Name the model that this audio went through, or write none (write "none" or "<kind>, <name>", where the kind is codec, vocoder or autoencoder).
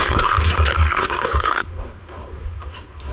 codec, SNAC